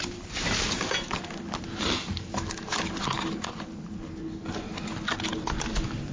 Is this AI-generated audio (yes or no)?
no